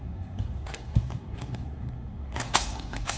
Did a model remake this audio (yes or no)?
yes